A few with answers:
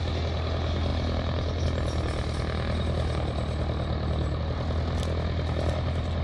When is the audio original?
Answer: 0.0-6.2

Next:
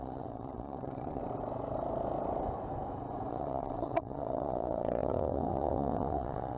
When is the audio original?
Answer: 1.2-3.3

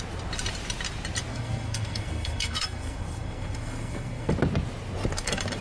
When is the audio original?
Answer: 0.0-1.3; 4.3-5.6

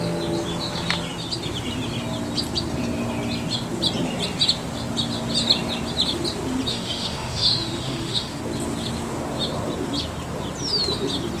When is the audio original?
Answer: 0.0-6.7; 8.4-11.4

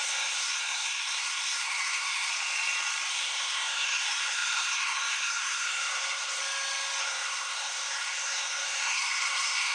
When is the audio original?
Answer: 2.3-3.1; 6.4-7.0

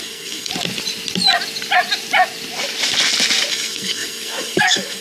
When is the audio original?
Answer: 0.5-3.5

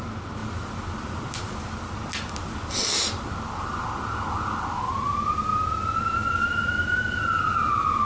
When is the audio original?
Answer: 0.0-8.0